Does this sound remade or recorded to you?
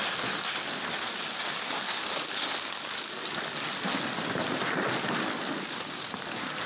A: recorded